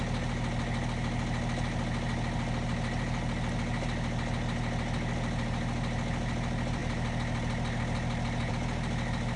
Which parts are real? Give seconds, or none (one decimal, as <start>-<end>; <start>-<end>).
0.0-9.4